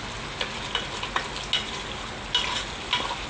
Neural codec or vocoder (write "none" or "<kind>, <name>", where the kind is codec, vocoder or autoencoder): none